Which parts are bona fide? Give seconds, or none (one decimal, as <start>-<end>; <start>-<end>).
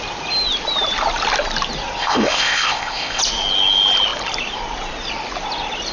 0.0-2.0; 3.2-5.9